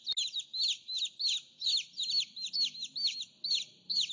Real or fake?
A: real